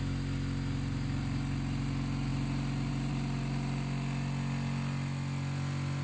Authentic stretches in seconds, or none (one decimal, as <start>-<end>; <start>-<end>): 0.0-6.0